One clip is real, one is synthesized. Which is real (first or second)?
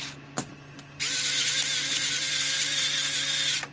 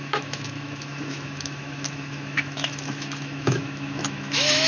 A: first